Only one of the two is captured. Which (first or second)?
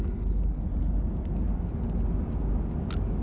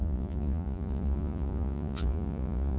first